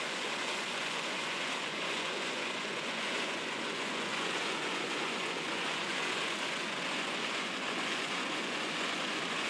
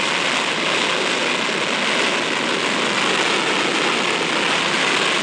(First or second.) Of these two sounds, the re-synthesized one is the first